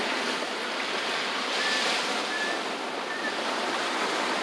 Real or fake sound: fake